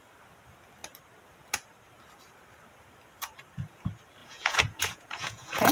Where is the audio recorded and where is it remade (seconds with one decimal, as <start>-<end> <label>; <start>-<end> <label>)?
0.0-4.2 recorded; 4.2-5.7 remade